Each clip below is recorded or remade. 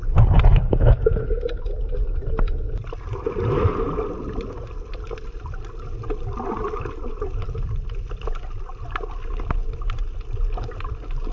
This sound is recorded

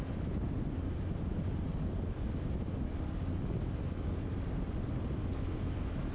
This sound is recorded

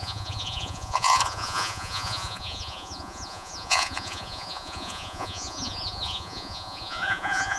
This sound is remade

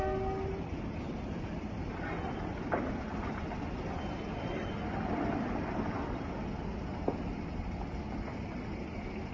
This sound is recorded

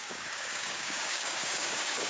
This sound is remade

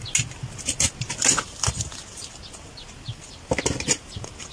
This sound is recorded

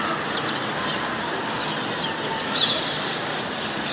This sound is recorded